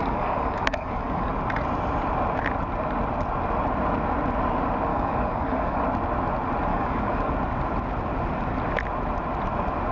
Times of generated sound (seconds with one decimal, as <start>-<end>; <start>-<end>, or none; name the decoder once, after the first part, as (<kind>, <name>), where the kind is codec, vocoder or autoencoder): 0.0-1.3 (codec, DAC); 4.9-5.8; 6.7-7.3